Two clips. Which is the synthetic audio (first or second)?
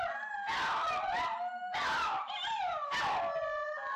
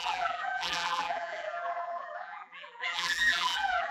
second